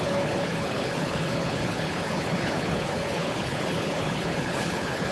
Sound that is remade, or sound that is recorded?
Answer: remade